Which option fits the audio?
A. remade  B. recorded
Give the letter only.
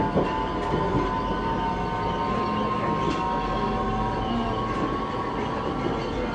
B